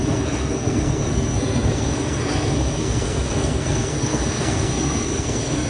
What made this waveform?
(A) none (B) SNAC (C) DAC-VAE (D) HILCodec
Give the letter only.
B